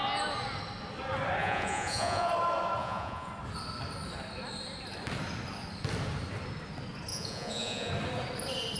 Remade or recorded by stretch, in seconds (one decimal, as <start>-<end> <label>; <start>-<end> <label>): 0.0-1.4 recorded; 1.4-2.3 remade; 2.3-2.8 recorded; 2.8-3.3 remade; 3.3-7.1 recorded; 7.1-7.9 remade; 7.9-8.8 recorded